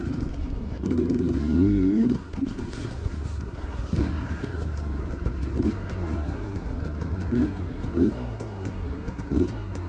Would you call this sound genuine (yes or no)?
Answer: no